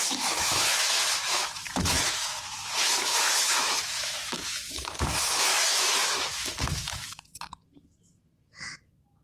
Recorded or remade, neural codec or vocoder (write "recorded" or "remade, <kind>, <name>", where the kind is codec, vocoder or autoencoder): remade, autoencoder, DAC-VAE